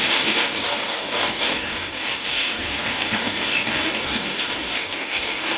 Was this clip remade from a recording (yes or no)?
yes